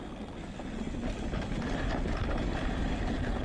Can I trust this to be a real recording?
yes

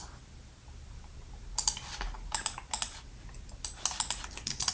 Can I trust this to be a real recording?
yes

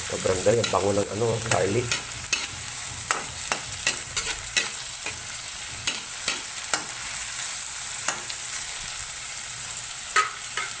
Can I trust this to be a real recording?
no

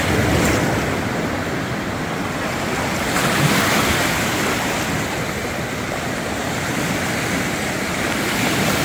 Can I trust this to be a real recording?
yes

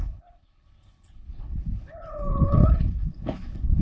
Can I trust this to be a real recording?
no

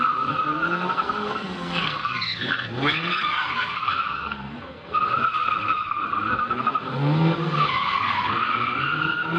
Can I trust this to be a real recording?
no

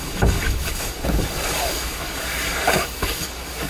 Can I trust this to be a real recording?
no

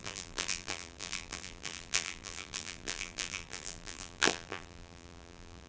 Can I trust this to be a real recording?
no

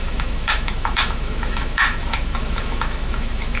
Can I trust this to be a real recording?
no